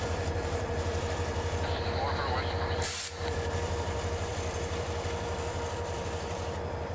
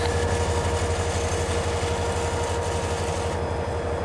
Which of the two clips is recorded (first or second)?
second